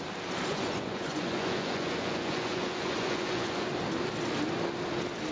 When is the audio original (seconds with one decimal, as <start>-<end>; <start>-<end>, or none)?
0.0-0.5; 3.7-5.3